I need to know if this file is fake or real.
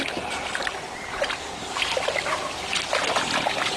fake